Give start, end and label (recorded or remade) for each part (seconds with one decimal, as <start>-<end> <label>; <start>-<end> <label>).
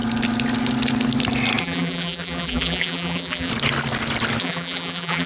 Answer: 0.0-1.6 recorded; 1.6-3.5 remade; 3.5-4.4 recorded; 4.4-5.3 remade